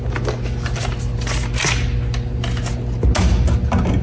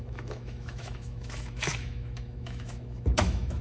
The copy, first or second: second